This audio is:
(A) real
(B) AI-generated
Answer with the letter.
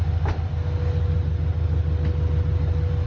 A